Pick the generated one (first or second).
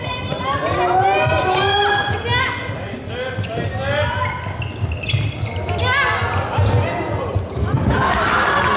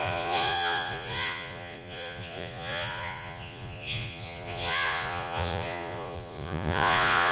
second